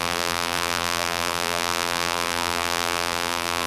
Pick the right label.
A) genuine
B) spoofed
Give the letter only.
B